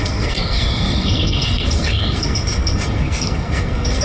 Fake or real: fake